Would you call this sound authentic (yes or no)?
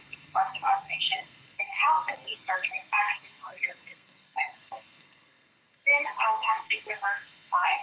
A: no